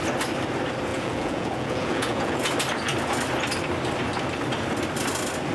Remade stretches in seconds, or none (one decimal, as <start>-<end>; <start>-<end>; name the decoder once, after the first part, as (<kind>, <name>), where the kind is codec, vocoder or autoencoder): 0.9-2.5 (vocoder, Vocos)